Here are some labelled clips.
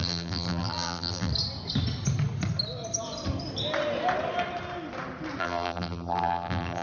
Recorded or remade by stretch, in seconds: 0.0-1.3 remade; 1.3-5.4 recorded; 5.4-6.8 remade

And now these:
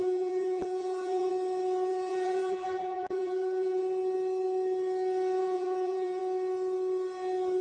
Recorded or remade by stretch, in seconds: 0.0-1.3 remade; 1.3-1.9 recorded; 1.9-3.8 remade; 3.8-5.4 recorded; 5.4-6.2 remade; 6.2-7.6 recorded

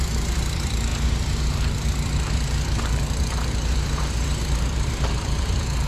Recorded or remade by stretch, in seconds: 0.0-5.9 remade

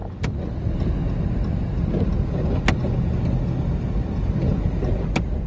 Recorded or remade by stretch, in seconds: 0.0-1.0 remade; 1.0-5.5 recorded

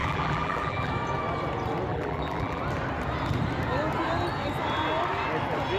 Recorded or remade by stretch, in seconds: 0.0-0.9 remade; 0.9-1.9 recorded; 1.9-2.6 remade; 2.6-5.8 recorded